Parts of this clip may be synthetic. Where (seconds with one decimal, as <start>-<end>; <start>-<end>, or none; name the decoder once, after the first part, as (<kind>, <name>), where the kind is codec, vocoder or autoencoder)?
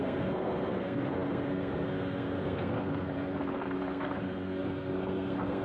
0.0-5.6 (codec, SNAC)